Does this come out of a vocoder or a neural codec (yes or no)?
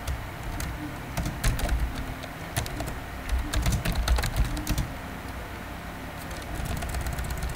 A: no